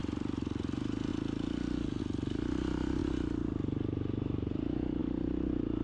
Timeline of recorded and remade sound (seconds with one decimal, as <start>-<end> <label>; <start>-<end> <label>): 0.0-5.8 recorded

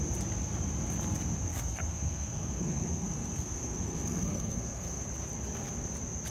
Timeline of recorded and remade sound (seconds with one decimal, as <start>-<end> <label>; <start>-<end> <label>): 0.0-1.5 recorded; 1.5-5.0 remade; 5.0-6.3 recorded